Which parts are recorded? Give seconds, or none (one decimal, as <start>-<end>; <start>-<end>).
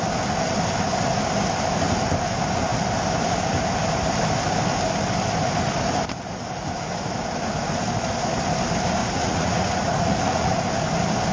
0.0-9.0; 10.5-11.3